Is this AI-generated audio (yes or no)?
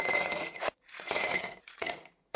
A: yes